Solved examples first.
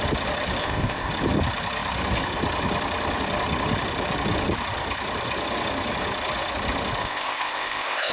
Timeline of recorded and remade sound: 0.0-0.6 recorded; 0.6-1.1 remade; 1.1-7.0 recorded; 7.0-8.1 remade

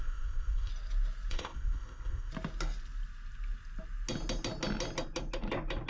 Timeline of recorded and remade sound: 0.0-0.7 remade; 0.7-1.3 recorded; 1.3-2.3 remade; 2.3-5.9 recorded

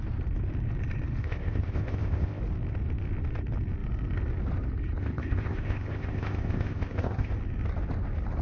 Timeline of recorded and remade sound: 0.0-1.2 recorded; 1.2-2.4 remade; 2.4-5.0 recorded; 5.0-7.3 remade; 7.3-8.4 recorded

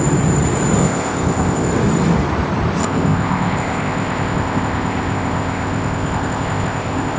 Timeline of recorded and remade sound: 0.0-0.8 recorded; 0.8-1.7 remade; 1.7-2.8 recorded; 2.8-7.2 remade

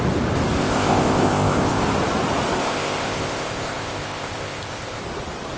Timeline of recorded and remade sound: 0.0-0.6 recorded; 0.6-1.8 remade; 1.8-2.6 recorded; 2.6-5.0 remade; 5.0-5.6 recorded

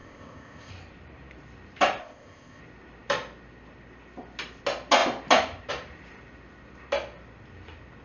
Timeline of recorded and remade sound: 0.0-0.7 remade; 0.7-2.0 recorded; 2.0-2.6 remade; 2.6-8.0 recorded

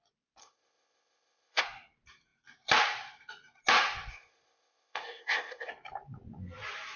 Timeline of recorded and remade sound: 0.0-0.4 recorded; 0.4-1.6 remade; 1.6-4.1 recorded; 4.1-5.7 remade; 5.7-7.0 recorded

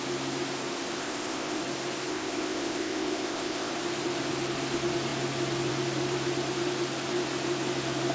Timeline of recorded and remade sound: 0.0-1.0 recorded; 1.0-1.6 remade; 1.6-2.1 recorded; 2.1-3.7 remade; 3.7-8.1 recorded